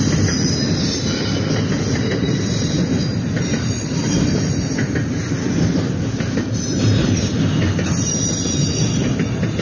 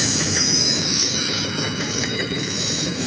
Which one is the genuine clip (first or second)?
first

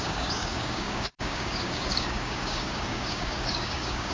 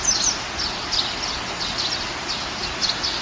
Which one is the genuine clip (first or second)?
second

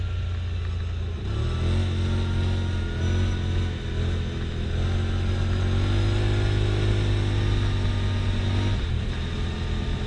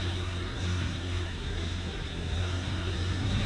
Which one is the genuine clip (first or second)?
first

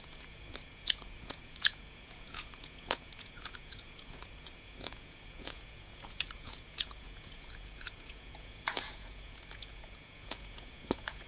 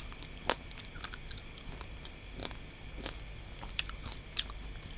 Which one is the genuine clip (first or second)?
second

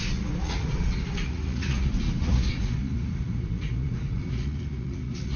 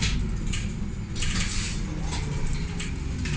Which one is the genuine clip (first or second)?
second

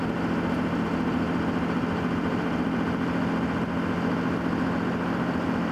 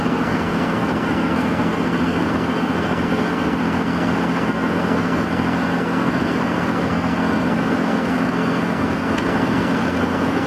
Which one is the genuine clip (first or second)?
first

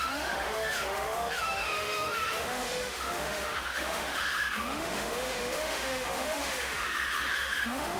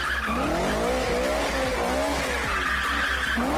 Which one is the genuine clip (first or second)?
second